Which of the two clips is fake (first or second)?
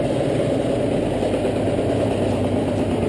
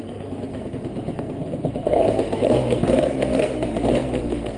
second